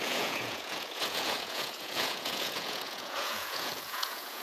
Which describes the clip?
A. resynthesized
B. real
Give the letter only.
A